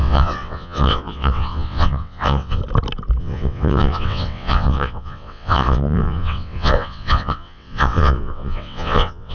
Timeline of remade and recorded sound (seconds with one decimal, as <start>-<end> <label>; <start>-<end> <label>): 0.0-2.6 remade; 2.6-3.2 recorded; 3.2-9.3 remade